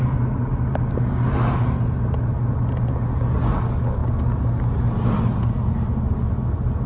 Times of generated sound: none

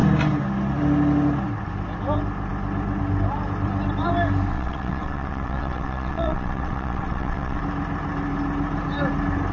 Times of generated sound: 4.5-7.6 (vocoder, WaveNeXt)